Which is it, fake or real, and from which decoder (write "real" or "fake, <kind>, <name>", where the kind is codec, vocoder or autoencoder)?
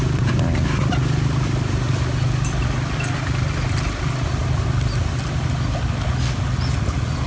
real